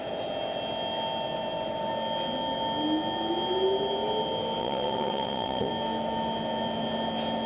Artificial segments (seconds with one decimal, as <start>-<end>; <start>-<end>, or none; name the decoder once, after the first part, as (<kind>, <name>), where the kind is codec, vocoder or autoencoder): 4.6-5.7 (vocoder, WaveNeXt)